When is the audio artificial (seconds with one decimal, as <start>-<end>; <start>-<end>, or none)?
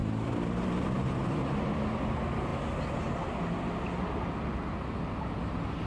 0.0-2.1